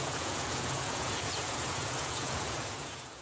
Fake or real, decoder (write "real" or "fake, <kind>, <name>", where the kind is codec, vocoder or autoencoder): fake, vocoder, Vocos